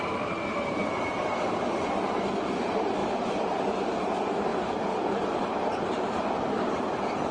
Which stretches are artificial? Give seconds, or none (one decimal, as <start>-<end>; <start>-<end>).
0.8-1.3; 3.0-3.6; 4.5-6.5